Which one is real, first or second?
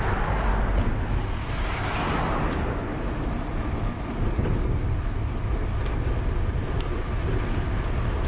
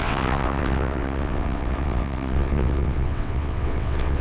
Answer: first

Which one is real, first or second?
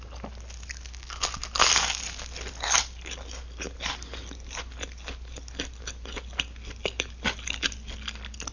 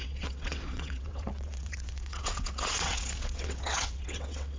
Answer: first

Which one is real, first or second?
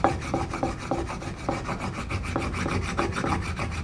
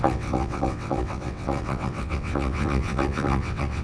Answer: first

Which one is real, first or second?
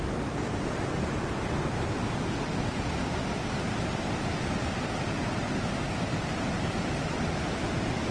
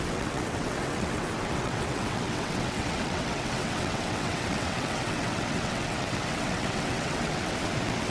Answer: first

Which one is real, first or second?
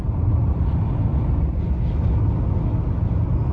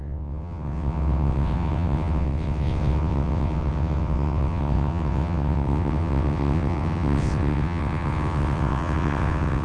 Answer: first